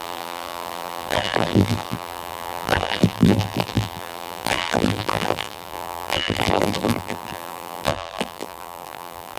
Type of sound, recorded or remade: remade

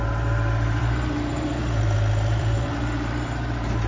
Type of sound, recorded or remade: remade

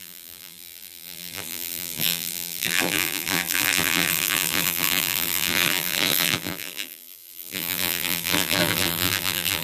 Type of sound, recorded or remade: remade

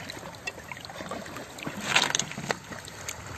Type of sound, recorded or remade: recorded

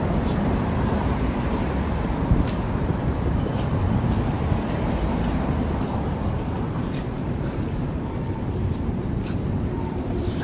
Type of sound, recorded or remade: remade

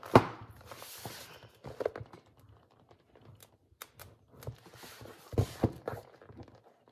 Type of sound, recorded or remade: recorded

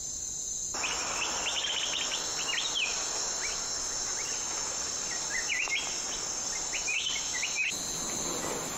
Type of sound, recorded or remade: recorded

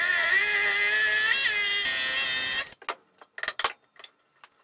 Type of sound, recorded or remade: recorded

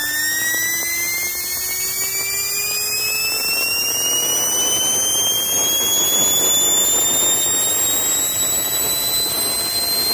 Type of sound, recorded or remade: recorded